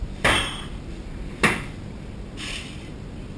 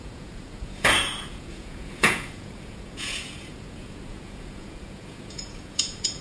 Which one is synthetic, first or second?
second